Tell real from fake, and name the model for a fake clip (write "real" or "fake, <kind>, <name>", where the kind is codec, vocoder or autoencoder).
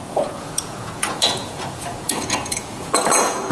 fake, vocoder, Vocos